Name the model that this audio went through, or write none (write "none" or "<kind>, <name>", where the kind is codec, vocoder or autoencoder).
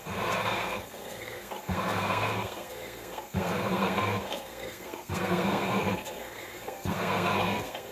codec, SNAC